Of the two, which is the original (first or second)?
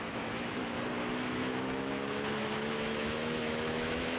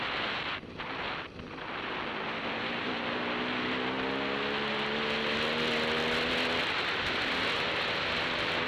second